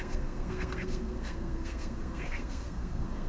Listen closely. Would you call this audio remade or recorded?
remade